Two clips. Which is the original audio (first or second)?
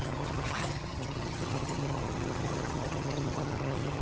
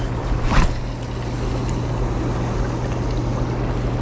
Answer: second